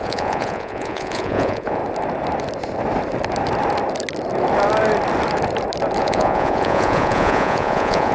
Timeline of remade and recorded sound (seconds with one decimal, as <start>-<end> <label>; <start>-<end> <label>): 0.0-1.8 remade; 1.8-6.0 recorded; 6.0-8.1 remade